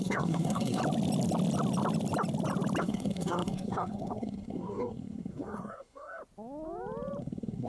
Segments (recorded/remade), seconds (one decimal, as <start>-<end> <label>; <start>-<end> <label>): 0.0-0.8 remade; 0.8-2.8 recorded; 2.8-6.2 remade; 6.2-7.2 recorded; 7.2-7.7 remade